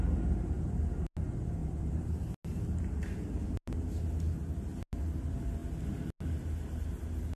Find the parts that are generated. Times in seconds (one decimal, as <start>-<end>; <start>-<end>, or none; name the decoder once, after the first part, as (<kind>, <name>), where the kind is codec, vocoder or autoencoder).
none